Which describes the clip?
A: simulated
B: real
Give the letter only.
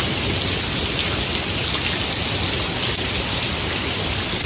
B